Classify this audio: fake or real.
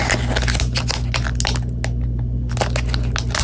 real